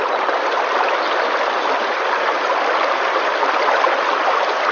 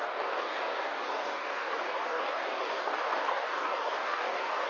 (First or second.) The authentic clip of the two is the first